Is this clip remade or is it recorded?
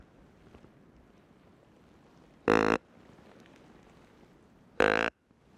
recorded